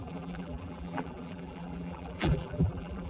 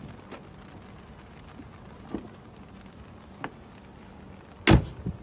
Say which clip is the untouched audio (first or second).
second